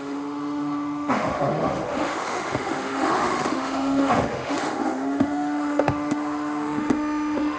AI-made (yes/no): yes